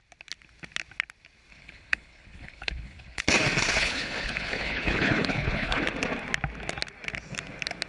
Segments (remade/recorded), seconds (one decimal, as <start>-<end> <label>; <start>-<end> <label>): 0.0-1.5 recorded; 1.5-3.2 remade; 3.2-3.8 recorded; 3.8-5.8 remade; 5.8-7.9 recorded